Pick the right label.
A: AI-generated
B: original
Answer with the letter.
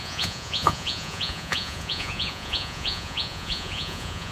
A